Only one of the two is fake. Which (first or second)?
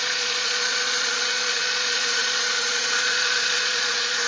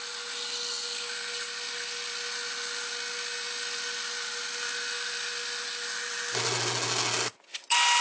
first